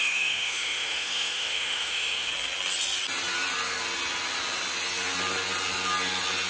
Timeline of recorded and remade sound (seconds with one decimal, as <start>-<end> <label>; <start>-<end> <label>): 0.0-2.3 remade; 2.3-6.5 recorded